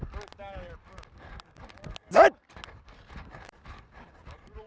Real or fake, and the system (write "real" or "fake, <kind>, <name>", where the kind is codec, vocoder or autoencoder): real